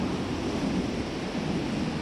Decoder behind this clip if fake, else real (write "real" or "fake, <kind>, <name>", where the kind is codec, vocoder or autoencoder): real